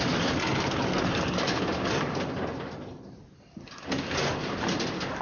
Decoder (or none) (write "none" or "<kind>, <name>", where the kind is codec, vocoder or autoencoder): none